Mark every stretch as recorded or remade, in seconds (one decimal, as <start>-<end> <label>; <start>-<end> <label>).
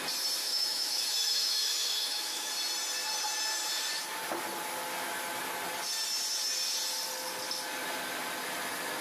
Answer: 0.0-0.4 recorded; 0.4-2.5 remade; 2.5-9.0 recorded